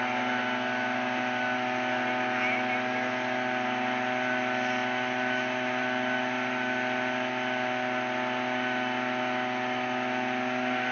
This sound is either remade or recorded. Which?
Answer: recorded